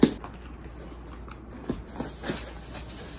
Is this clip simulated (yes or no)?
no